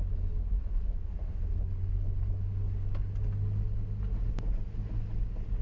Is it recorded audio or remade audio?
recorded